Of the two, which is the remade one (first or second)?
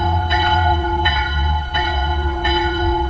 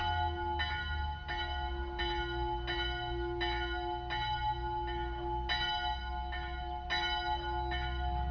first